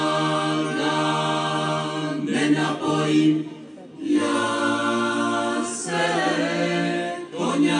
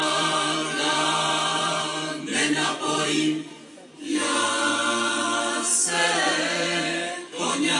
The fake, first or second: second